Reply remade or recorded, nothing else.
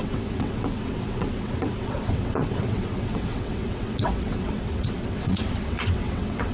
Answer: remade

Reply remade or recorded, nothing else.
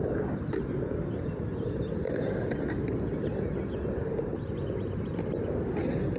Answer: recorded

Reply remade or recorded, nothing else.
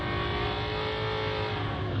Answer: recorded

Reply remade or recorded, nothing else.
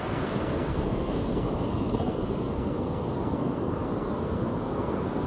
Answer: remade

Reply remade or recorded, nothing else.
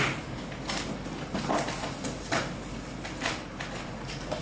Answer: recorded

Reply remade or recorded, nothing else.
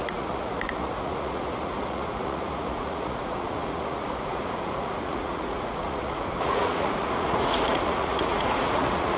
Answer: remade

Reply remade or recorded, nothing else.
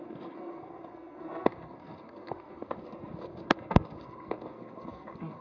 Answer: remade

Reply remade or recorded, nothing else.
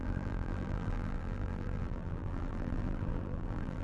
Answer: remade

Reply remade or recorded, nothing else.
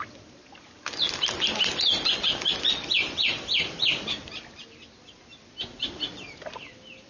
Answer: recorded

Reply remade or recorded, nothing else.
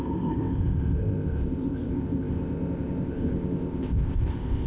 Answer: remade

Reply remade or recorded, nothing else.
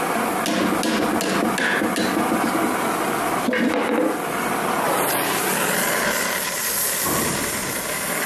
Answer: recorded